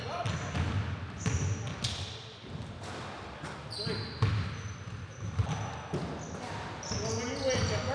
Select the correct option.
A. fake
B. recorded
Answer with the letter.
B